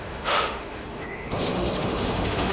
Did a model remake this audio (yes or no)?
yes